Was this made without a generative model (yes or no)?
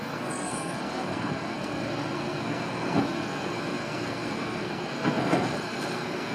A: no